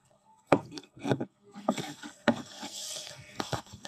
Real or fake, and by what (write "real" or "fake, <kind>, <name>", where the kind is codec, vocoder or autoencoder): fake, codec, SNAC